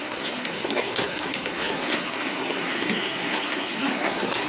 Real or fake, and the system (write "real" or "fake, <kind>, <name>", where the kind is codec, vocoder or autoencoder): fake, codec, SNAC